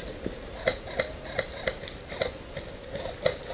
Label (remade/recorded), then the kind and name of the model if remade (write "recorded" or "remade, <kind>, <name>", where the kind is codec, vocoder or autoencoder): recorded